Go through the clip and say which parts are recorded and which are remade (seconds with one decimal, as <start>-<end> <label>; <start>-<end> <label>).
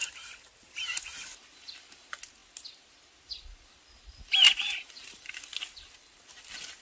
0.0-6.8 recorded